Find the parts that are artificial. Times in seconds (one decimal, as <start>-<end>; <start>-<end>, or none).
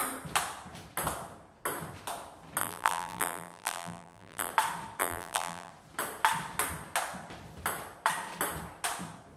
2.6-4.5; 5.0-5.7